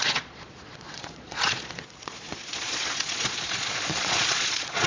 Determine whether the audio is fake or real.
fake